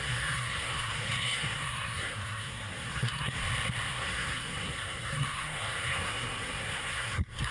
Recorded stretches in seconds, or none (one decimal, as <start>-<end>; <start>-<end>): 3.4-3.9